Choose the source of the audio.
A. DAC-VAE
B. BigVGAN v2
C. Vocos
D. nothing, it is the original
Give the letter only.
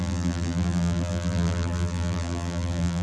B